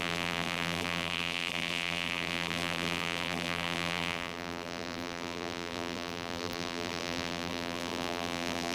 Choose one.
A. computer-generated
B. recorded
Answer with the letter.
A